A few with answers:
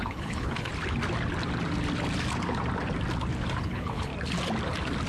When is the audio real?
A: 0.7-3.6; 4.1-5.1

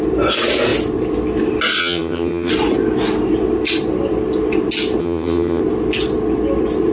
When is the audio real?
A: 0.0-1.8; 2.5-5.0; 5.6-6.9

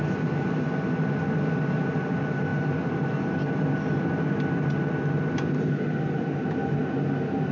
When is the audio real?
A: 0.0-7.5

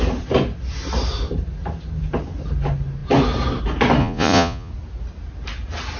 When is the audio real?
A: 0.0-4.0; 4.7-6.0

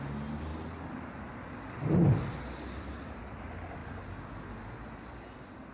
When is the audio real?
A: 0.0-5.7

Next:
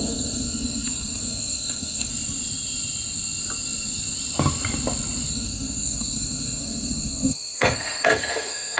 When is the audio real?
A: 2.1-5.3

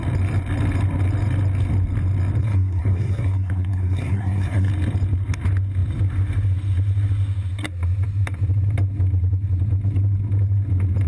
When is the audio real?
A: 0.0-2.4; 4.7-11.1

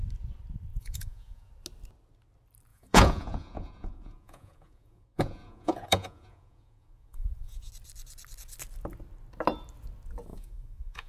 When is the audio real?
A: 0.0-0.7; 1.5-2.7; 7.7-10.3